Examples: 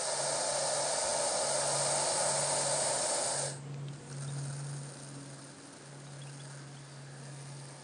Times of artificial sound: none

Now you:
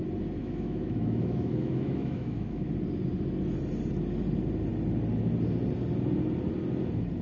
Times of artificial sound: 0.4-2.7 (autoencoder, DAC-VAE)

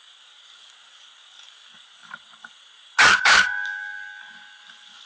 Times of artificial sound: 0.0-5.1 (codec, DAC)